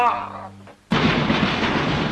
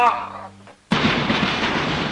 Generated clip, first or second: second